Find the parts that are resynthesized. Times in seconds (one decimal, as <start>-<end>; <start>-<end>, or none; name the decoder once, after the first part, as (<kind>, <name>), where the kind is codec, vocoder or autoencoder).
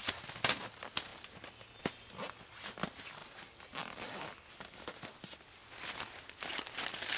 none